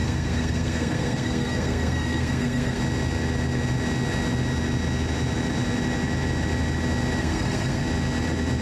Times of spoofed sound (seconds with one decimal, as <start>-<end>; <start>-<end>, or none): 0.0-2.8; 7.2-7.8